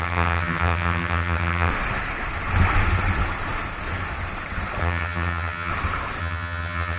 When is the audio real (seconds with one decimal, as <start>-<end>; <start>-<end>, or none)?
1.7-4.8; 5.7-6.2